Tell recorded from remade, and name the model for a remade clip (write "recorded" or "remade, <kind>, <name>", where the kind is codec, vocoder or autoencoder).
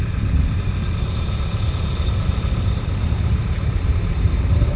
remade, vocoder, BigVGAN v2